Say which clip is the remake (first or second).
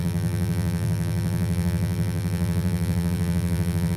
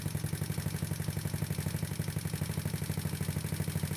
first